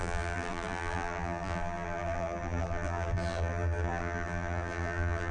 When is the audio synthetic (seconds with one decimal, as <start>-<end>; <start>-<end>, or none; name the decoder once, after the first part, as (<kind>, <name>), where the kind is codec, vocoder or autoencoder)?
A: 0.0-5.3 (vocoder, BigVGAN v2)